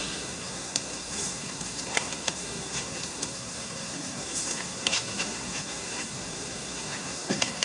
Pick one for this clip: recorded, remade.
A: remade